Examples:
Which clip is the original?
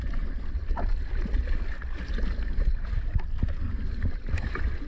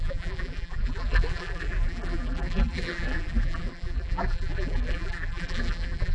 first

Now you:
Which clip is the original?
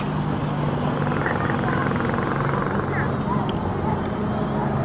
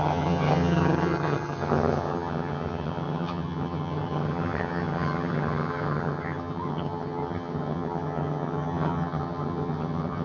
first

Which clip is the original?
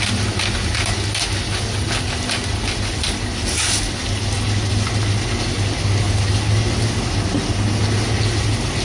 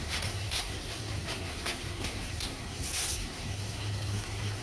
first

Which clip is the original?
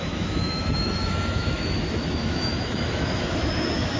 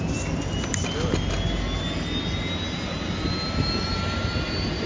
second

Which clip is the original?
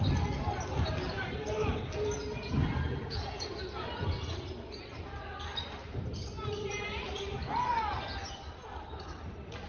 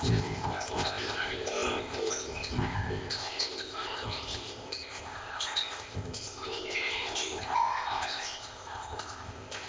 first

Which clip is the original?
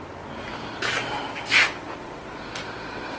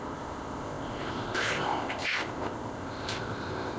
first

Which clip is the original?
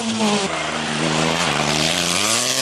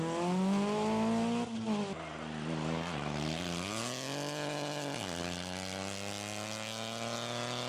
second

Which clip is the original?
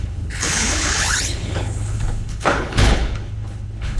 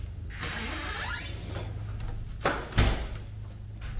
second